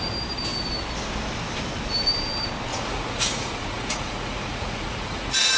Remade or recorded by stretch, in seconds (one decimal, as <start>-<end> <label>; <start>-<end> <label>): 0.0-2.7 recorded; 2.7-5.6 remade